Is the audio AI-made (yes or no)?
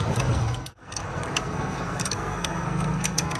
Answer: yes